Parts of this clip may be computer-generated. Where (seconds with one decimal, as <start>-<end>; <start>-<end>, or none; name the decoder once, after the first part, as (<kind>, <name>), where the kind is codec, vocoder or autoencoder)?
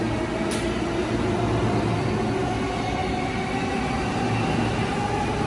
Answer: none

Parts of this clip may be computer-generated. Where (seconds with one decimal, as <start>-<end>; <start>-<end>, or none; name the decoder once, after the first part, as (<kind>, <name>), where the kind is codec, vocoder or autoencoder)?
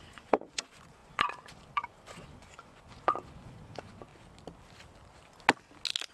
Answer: 0.0-4.1 (vocoder, Vocos)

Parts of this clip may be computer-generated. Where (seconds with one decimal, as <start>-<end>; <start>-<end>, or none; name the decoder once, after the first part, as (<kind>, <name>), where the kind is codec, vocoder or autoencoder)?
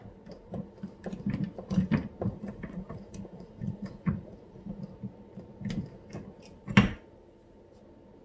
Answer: 2.3-4.8 (vocoder, Vocos)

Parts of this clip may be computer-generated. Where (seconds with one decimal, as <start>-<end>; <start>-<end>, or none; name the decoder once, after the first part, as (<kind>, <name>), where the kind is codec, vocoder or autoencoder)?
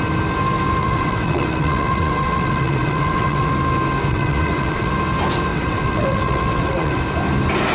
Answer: 0.8-3.5 (vocoder, WaveNeXt); 4.1-4.9; 5.5-7.0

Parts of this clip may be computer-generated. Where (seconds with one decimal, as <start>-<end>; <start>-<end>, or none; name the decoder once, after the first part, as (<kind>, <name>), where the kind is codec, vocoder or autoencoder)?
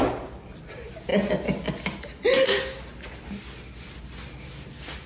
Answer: none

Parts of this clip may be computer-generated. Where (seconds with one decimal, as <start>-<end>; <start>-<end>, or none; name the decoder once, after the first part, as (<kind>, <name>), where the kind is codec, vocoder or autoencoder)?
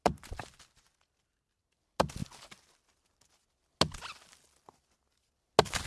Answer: none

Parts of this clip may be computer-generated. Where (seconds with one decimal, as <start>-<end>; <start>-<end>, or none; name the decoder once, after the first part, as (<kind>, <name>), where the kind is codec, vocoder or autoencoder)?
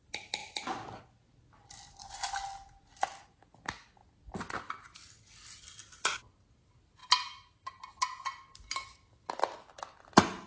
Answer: none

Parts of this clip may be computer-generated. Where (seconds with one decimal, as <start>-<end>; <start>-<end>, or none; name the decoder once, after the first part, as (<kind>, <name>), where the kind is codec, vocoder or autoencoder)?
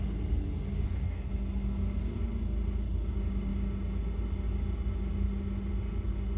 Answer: 0.7-1.3 (codec, DAC)